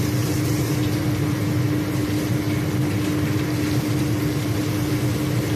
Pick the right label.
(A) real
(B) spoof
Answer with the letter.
A